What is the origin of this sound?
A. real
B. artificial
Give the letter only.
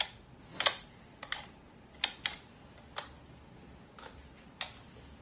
A